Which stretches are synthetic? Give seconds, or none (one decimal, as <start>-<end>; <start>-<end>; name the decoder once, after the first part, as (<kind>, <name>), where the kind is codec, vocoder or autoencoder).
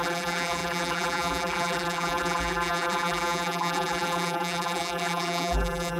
0.0-6.0 (vocoder, BigVGAN v2)